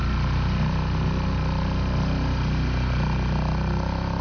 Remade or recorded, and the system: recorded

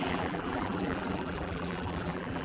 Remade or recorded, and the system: remade, vocoder, BigVGAN v2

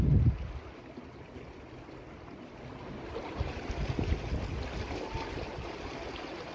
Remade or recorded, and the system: recorded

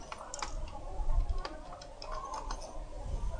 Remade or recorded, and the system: recorded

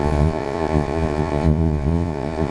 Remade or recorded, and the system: remade, vocoder, Vocos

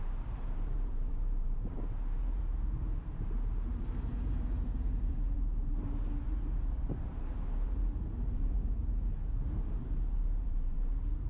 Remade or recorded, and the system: remade, vocoder, BigVGAN v2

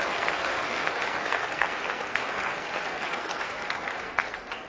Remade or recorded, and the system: remade, codec, SNAC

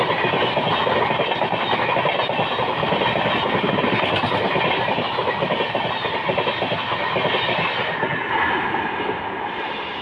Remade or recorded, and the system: recorded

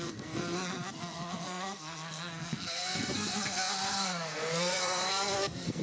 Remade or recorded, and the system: remade, codec, SNAC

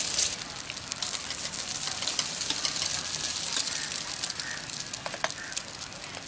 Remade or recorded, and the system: recorded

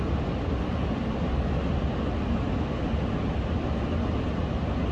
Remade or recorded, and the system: recorded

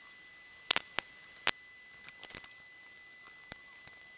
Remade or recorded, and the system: recorded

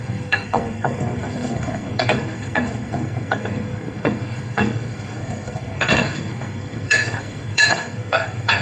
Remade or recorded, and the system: remade, codec, SNAC